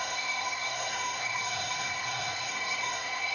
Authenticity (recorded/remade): remade